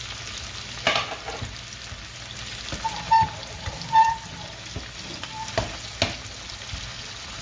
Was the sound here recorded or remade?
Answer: recorded